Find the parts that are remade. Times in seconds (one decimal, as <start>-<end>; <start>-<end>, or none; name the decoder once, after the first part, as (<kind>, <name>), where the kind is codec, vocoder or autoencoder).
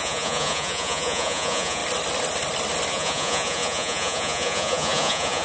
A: 0.0-1.8 (vocoder, Vocos); 2.9-5.4